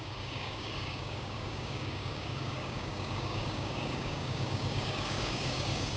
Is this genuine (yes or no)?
no